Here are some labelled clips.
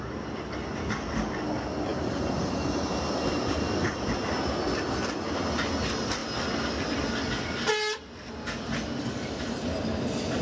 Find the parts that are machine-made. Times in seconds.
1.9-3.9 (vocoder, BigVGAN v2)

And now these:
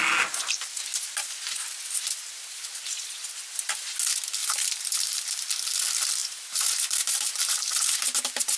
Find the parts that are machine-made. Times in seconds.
4.4-5.3 (vocoder, BigVGAN v2); 6.2-8.6

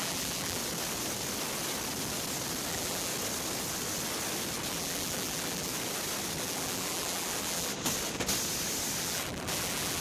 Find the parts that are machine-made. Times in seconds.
0.0-0.6 (vocoder, BigVGAN v2); 2.7-3.1; 4.7-5.7; 6.4-7.7; 9.0-10.0